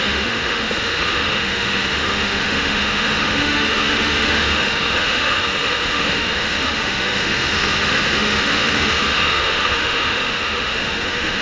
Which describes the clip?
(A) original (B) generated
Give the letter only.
B